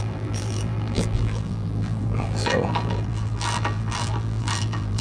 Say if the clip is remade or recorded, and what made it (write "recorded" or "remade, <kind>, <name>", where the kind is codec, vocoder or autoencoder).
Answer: remade, vocoder, BigVGAN v2